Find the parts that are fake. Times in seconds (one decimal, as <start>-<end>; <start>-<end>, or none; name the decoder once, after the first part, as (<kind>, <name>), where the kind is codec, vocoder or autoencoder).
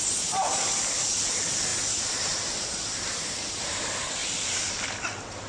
4.2-5.5 (vocoder, BigVGAN v2)